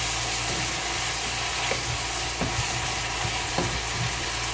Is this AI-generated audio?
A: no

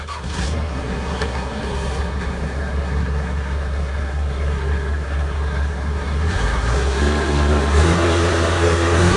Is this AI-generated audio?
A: yes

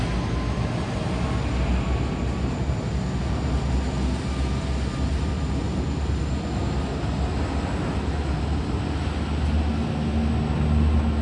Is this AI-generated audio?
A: no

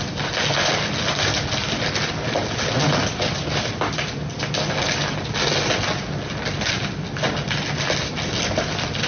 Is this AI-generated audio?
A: no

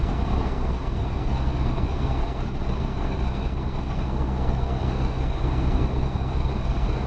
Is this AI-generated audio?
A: yes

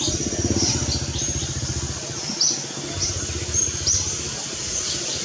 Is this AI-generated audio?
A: no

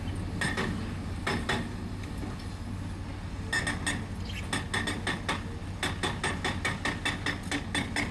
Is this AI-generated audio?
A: no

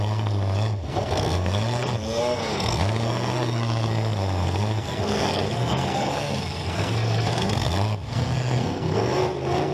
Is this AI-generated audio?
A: yes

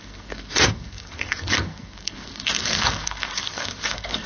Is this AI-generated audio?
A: yes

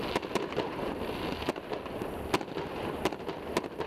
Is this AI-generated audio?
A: no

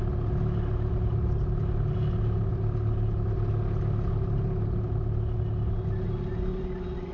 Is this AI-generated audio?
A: no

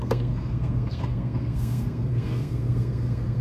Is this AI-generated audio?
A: yes